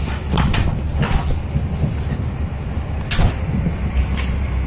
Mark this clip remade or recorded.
recorded